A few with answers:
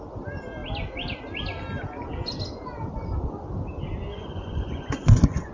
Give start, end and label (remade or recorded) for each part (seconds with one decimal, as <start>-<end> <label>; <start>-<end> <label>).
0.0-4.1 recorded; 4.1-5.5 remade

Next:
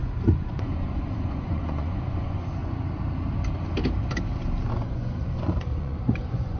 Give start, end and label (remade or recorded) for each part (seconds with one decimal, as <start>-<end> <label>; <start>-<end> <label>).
0.0-2.6 remade; 2.6-4.7 recorded; 4.7-6.6 remade

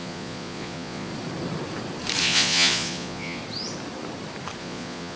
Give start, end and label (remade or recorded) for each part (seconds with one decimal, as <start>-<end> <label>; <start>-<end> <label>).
0.0-1.1 remade; 1.1-2.2 recorded; 2.2-3.4 remade; 3.4-4.6 recorded; 4.6-5.2 remade

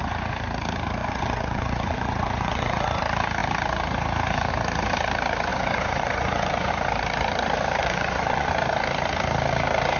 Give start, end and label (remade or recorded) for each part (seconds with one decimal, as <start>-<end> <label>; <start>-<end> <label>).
0.0-1.0 recorded; 1.0-3.0 remade; 3.0-5.5 recorded; 5.5-6.7 remade; 6.7-7.8 recorded; 7.8-8.5 remade; 8.5-10.0 recorded

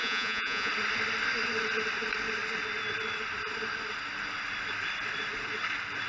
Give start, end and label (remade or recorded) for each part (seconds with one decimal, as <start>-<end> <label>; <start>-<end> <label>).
0.0-0.7 remade; 0.7-6.1 recorded

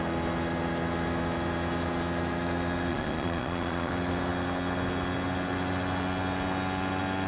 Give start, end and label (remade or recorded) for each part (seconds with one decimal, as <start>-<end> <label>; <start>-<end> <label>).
0.0-2.9 recorded; 2.9-3.9 remade; 3.9-7.3 recorded

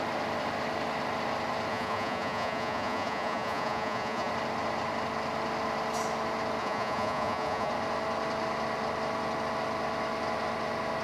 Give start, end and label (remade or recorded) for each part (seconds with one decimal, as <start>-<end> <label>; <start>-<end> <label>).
0.0-1.7 recorded; 1.7-4.3 remade; 4.3-6.6 recorded; 6.6-7.7 remade; 7.7-11.0 recorded